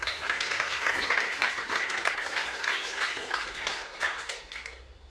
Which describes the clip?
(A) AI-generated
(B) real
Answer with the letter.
A